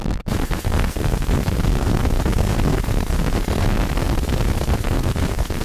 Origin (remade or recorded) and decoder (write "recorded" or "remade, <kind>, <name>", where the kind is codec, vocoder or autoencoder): remade, codec, SNAC